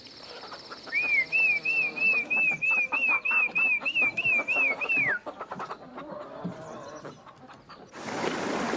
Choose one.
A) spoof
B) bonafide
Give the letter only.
B